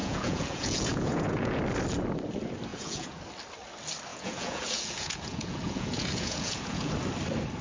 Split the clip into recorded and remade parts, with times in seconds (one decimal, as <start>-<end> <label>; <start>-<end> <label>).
0.0-1.6 remade; 1.6-2.7 recorded; 2.7-3.2 remade; 3.2-4.1 recorded; 4.1-6.9 remade; 6.9-7.6 recorded